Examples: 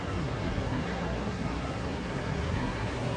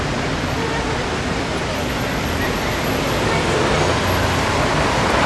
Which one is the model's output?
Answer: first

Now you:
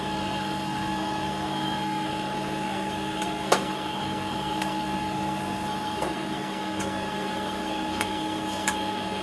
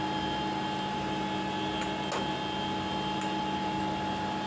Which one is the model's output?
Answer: first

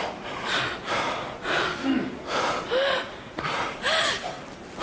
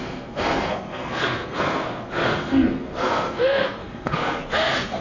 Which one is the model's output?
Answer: second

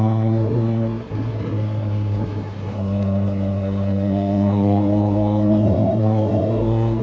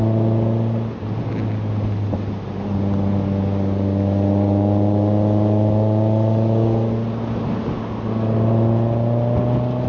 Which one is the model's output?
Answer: first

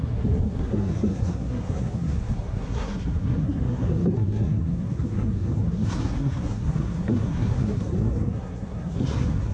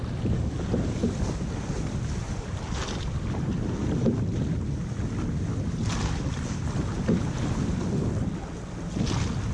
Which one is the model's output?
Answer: first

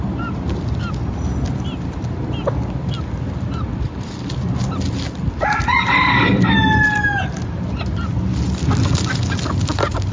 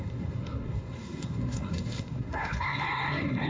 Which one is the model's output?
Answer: second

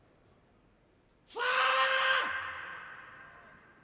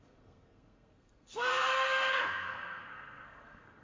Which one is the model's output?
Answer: second